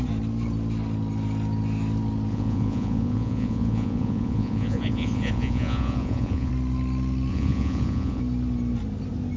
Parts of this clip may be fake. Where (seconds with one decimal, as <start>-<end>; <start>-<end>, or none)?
2.3-6.5; 7.3-8.2